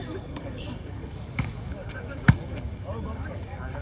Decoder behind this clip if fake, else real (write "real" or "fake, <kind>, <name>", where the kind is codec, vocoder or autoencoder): fake, codec, DAC